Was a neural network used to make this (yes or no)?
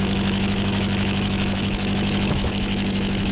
yes